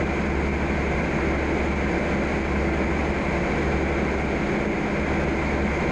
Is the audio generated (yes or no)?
no